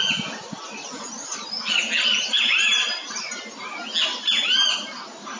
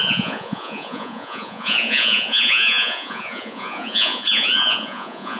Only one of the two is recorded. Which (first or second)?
first